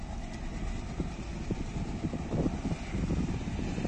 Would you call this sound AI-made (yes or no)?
no